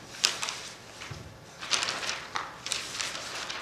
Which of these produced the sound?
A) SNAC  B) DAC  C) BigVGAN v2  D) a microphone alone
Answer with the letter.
C